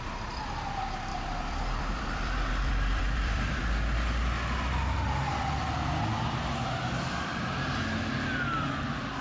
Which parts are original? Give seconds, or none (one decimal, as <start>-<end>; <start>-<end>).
0.0-1.1; 3.6-9.2